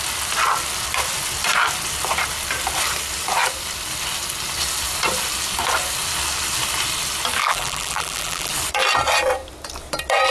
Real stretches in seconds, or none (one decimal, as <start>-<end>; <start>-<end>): 0.0-7.4; 8.5-10.3